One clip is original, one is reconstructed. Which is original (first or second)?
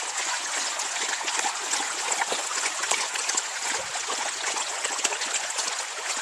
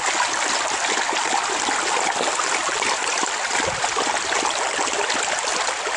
second